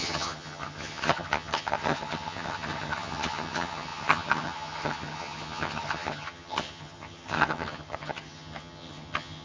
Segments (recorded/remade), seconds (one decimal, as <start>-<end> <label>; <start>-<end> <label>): 0.0-9.4 remade